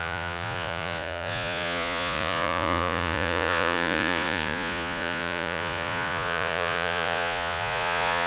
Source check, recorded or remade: remade